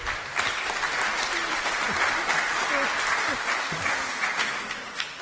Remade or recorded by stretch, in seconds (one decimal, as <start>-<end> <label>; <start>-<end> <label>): 0.0-5.2 recorded